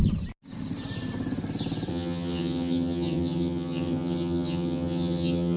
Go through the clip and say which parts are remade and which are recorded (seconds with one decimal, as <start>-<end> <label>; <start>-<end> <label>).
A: 0.0-1.9 recorded; 1.9-5.6 remade